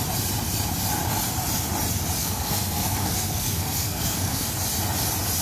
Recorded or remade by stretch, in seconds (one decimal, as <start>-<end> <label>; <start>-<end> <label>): 0.0-2.2 recorded; 2.2-4.5 remade; 4.5-5.4 recorded